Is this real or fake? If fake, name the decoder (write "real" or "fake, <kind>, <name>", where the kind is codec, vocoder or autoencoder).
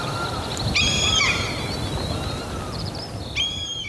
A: real